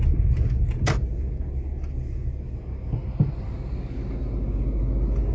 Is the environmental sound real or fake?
real